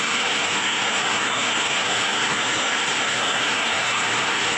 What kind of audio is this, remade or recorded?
remade